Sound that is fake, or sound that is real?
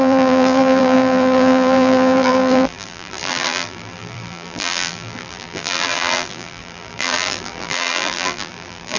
fake